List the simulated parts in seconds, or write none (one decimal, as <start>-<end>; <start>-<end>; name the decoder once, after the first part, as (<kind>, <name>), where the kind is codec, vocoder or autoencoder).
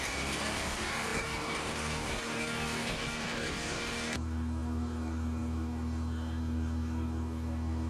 0.0-7.9 (codec, DAC)